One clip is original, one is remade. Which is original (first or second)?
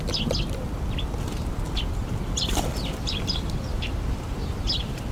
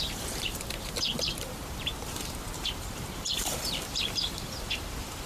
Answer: first